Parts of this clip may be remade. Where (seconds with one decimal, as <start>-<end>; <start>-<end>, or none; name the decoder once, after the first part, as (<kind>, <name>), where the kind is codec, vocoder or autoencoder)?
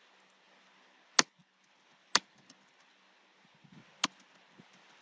none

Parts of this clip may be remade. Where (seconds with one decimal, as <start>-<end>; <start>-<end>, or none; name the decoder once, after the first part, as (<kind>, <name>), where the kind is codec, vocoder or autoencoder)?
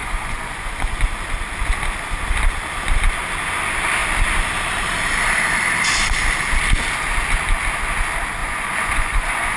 0.0-0.7 (vocoder, Vocos); 8.4-9.6